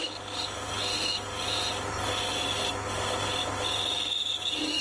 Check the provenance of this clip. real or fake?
real